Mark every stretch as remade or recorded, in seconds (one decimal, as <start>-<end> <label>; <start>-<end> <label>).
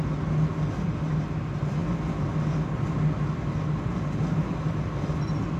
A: 0.0-5.6 recorded